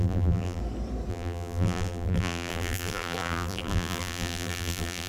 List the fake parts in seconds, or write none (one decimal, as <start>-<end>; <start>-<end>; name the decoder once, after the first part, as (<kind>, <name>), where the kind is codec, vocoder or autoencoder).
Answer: 0.0-0.6 (vocoder, BigVGAN v2); 1.1-5.1

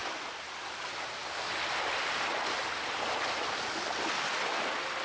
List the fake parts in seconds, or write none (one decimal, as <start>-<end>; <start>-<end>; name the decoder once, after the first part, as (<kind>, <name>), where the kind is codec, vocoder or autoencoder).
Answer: none

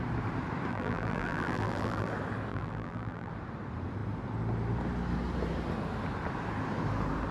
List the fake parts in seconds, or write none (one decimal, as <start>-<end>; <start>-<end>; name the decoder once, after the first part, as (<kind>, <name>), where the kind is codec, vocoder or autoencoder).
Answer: 0.7-2.1 (vocoder, BigVGAN v2); 2.5-3.3